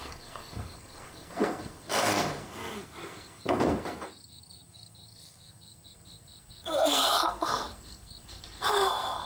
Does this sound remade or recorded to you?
remade